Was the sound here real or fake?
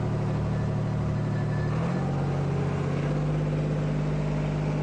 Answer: real